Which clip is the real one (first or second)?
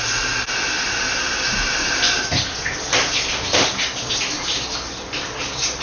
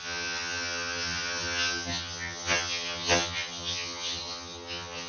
first